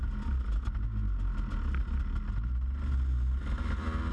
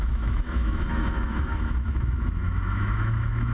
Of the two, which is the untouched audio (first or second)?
first